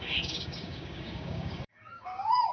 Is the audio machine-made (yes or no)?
yes